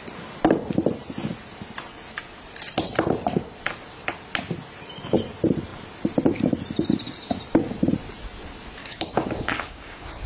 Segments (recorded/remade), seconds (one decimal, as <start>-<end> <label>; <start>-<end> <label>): 0.0-8.8 recorded; 8.8-10.3 remade